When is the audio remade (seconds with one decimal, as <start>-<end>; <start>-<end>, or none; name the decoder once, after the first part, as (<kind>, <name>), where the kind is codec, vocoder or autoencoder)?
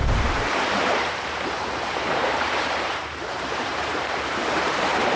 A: 0.0-5.2 (vocoder, BigVGAN v2)